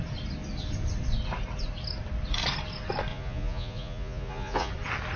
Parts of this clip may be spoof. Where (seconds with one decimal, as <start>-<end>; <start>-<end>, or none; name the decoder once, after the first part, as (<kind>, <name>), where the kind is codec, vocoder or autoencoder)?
3.1-4.7 (vocoder, Vocos)

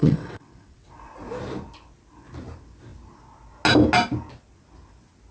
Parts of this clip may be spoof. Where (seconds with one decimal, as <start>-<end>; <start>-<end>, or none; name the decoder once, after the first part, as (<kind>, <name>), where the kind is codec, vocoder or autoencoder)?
0.0-0.9 (vocoder, WaveNeXt)

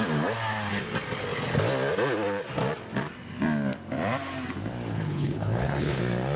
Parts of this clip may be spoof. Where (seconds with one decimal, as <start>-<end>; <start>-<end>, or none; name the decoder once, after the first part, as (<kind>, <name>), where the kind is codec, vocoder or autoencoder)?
4.9-6.0 (codec, HILCodec)